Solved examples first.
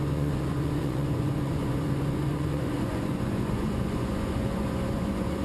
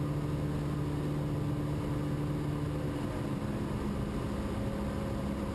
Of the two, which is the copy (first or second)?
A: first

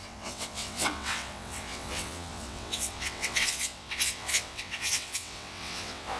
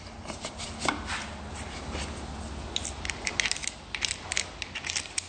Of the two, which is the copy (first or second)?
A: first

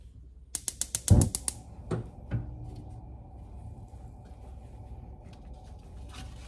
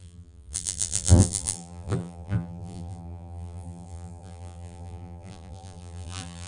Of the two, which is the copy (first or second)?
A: second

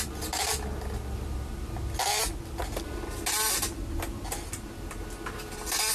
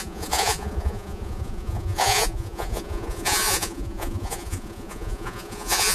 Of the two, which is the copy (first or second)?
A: second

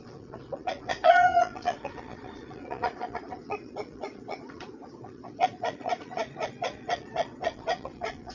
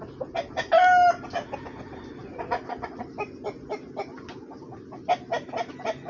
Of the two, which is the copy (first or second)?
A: first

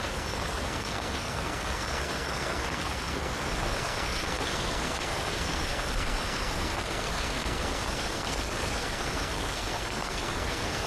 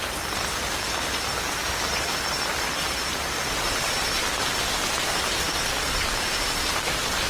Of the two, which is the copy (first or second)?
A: first